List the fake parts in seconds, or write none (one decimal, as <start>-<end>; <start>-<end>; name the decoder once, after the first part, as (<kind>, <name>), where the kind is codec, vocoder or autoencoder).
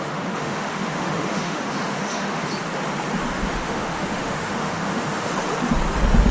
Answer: 0.0-2.5 (autoencoder, DAC-VAE); 3.5-5.3